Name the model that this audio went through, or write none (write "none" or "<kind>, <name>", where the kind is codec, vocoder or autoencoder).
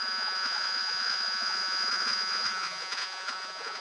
vocoder, Vocos